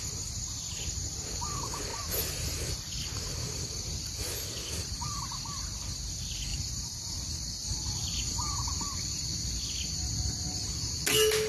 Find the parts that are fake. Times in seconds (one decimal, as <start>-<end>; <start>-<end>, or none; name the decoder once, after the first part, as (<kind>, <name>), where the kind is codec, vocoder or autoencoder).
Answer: 6.5-7.3 (vocoder, BigVGAN v2); 8.0-9.2